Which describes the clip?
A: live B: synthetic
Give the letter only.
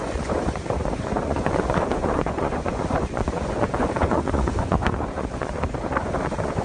B